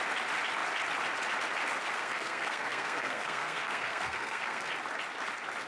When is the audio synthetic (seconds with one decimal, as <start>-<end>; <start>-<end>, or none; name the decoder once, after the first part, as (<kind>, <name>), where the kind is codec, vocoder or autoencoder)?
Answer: 1.8-4.7 (codec, SNAC)

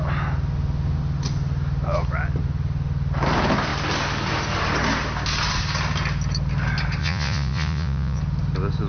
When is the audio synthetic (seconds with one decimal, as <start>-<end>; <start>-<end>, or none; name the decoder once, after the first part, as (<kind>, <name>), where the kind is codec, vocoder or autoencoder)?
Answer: 7.0-8.2 (vocoder, Vocos)

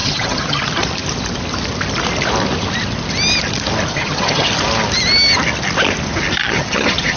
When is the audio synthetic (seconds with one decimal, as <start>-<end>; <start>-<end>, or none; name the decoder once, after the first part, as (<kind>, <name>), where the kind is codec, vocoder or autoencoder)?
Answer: 0.0-0.6 (vocoder, HiFi-GAN); 3.9-4.5; 6.4-7.2

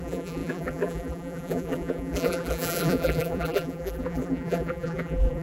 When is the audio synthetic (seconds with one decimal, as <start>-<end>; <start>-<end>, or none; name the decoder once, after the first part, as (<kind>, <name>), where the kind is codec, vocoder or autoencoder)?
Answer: 0.0-5.4 (vocoder, BigVGAN v2)